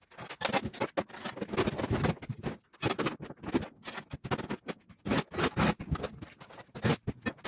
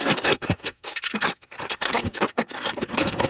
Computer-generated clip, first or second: second